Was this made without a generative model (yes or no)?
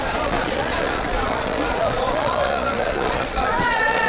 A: no